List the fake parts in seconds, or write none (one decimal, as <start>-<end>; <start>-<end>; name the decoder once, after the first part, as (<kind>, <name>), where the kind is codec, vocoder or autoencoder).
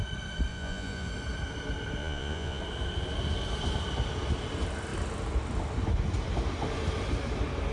0.5-1.1 (vocoder, Vocos); 2.0-2.6